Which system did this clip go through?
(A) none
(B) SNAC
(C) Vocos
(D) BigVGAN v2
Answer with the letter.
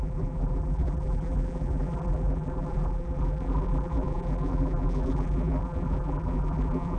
D